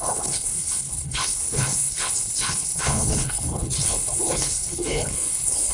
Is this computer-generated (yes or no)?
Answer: yes